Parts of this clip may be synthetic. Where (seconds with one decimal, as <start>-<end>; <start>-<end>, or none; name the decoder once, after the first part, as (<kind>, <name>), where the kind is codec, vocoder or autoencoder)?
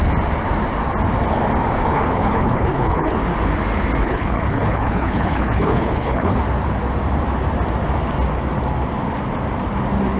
1.9-3.2 (codec, HILCodec); 4.0-6.4